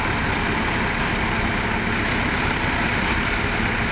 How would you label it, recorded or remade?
recorded